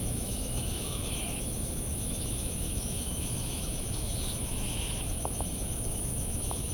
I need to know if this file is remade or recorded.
remade